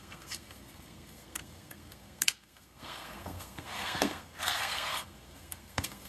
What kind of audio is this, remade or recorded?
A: remade